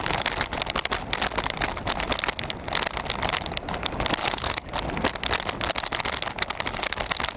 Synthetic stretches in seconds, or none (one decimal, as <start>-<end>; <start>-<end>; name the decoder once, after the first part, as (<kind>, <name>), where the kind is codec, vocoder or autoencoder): 4.2-4.7 (codec, HILCodec)